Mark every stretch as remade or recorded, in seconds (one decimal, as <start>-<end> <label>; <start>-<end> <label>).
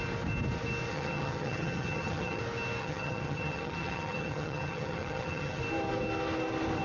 0.0-0.9 recorded; 0.9-2.4 remade; 2.4-2.8 recorded; 2.8-5.6 remade; 5.6-6.8 recorded